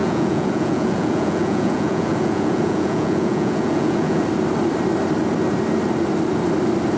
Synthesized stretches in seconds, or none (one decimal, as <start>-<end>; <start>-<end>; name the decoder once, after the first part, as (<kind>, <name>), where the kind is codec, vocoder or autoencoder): 0.0-4.2 (vocoder, Vocos)